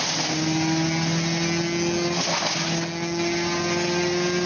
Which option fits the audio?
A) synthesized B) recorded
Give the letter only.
B